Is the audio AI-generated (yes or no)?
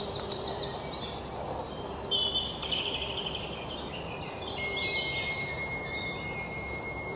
no